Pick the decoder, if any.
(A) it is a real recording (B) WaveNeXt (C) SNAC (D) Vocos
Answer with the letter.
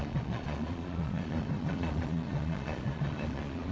D